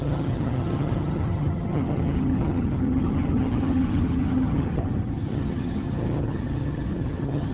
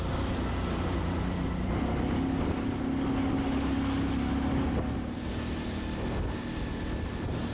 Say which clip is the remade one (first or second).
first